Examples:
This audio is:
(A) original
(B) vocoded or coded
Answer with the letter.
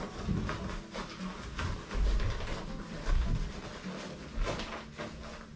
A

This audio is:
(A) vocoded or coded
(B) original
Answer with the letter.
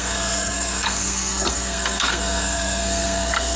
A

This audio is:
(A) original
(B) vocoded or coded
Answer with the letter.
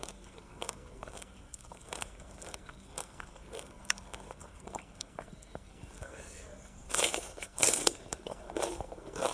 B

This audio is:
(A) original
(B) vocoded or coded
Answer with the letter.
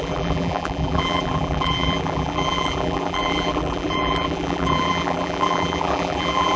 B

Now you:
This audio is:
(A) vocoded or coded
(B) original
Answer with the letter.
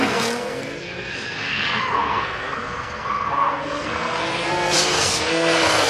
A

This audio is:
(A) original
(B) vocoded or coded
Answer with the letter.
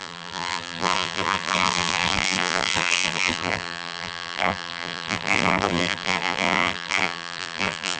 B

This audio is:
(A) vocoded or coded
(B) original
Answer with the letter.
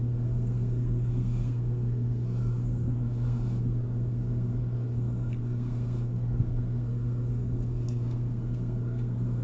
A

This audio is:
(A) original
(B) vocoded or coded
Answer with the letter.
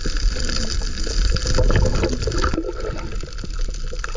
A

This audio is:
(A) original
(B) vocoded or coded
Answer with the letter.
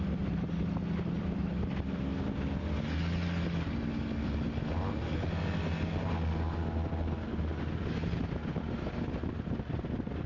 A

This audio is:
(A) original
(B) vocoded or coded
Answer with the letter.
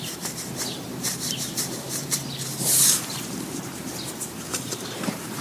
B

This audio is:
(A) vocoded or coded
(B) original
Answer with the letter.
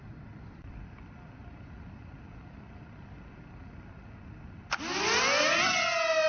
B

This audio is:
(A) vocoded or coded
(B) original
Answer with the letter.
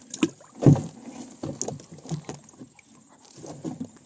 B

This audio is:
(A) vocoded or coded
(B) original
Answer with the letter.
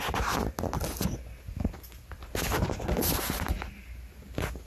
B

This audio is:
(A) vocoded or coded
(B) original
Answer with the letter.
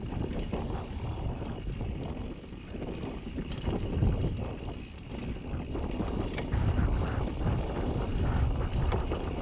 B